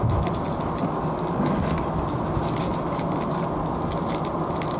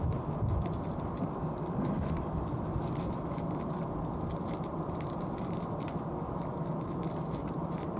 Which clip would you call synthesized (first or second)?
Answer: second